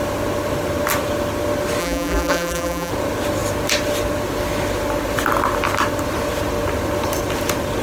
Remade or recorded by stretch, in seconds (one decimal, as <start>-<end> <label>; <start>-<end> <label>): 0.0-1.8 recorded; 1.8-2.9 remade; 2.9-7.8 recorded